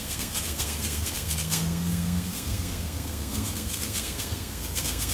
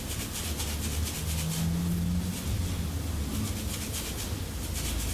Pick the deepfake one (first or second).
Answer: first